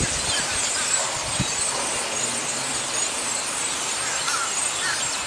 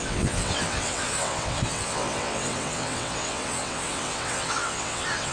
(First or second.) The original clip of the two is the first